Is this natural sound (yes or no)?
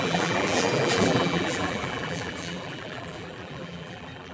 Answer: no